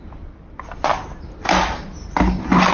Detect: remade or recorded recorded